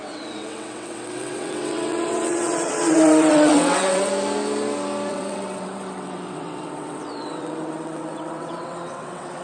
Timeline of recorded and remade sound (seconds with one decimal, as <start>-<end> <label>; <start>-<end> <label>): 0.0-4.1 remade; 4.1-5.1 recorded; 5.1-9.4 remade